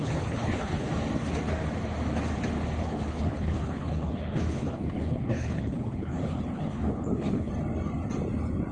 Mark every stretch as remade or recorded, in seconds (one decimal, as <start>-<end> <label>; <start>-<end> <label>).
0.0-0.9 remade; 0.9-2.8 recorded; 2.8-7.5 remade; 7.5-8.7 recorded